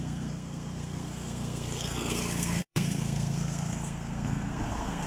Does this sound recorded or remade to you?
remade